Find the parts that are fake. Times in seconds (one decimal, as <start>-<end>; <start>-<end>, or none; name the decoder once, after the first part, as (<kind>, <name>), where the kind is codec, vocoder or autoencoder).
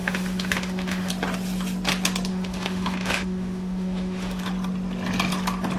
0.0-1.1 (autoencoder, DAC-VAE); 2.3-4.4